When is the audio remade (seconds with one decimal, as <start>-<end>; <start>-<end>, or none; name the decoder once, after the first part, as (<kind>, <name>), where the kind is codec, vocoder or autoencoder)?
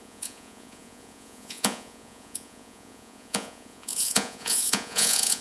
0.0-5.4 (vocoder, Vocos)